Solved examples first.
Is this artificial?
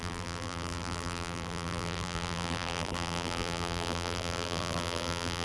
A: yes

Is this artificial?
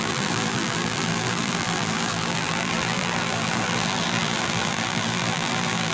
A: yes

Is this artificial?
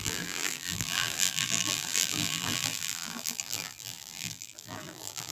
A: yes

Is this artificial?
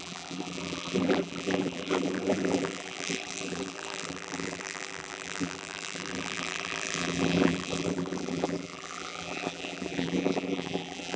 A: yes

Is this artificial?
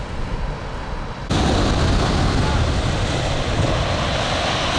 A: no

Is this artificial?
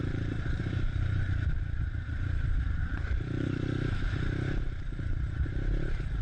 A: yes